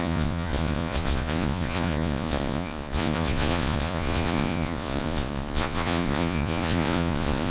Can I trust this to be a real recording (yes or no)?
no